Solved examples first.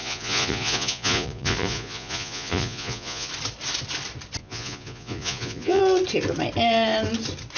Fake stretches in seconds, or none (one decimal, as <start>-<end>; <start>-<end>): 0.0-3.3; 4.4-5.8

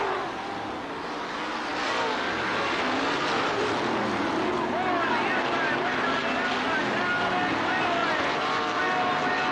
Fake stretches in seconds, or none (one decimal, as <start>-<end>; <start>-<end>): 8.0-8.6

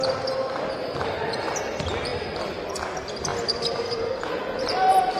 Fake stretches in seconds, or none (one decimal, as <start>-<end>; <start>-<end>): none

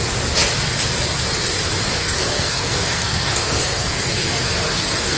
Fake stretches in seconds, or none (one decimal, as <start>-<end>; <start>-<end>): 2.0-5.2

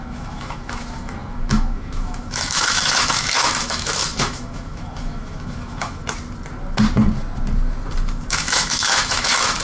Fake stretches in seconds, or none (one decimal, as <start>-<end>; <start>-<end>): 0.0-6.0; 8.3-9.6

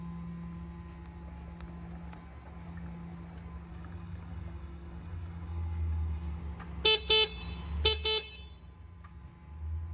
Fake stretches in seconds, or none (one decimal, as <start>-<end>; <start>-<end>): 3.7-6.4

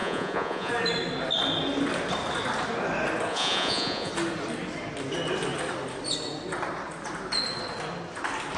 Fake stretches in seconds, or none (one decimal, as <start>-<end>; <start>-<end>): 0.0-0.7; 3.3-4.1